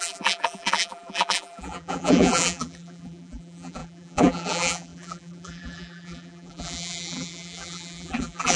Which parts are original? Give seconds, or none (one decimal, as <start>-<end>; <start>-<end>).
none